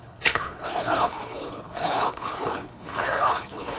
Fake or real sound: fake